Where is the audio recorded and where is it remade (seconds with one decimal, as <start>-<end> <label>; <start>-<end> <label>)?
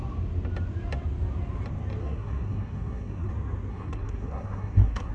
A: 0.0-2.0 recorded; 2.0-3.3 remade; 3.3-3.7 recorded; 3.7-5.1 remade